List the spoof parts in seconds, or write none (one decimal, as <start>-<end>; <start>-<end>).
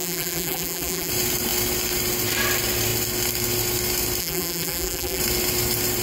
0.0-1.1; 4.2-5.2